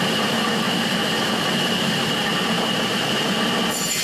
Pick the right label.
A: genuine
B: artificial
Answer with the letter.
B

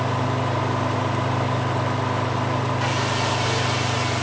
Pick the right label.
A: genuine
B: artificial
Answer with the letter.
A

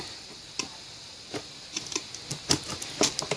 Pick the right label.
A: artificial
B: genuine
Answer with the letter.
B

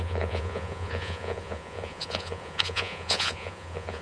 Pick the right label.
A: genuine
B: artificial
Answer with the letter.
B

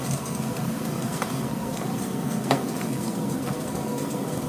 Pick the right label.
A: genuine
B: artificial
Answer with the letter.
B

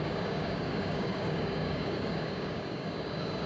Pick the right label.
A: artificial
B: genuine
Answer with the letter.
A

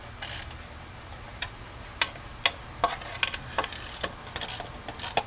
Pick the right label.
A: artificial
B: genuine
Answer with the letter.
B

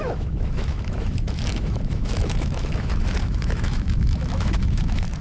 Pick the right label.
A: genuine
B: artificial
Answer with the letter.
B